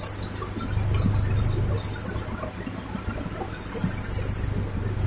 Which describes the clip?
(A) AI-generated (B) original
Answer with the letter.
B